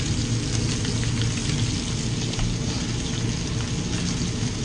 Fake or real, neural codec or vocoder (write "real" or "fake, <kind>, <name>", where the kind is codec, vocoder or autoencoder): real